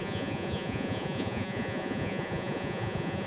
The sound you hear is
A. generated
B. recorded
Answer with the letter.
A